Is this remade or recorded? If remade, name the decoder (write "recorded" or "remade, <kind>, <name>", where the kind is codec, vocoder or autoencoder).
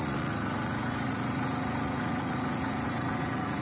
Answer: remade, vocoder, Vocos